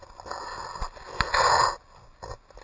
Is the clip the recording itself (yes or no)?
yes